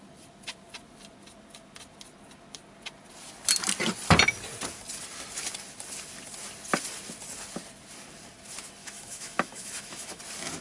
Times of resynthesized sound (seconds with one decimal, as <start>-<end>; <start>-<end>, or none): 8.8-10.2